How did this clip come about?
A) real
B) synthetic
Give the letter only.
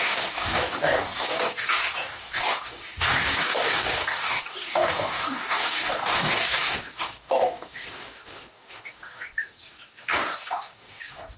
B